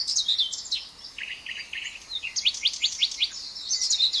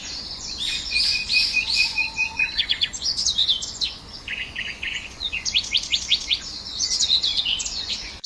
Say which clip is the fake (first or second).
second